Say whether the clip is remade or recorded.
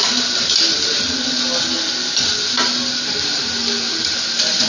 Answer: recorded